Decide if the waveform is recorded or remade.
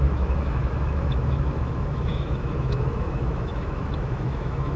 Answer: remade